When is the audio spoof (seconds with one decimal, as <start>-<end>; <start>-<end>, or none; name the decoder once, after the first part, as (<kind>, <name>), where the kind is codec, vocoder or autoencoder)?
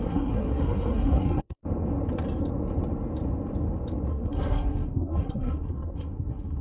0.0-1.6 (codec, SNAC); 4.1-6.6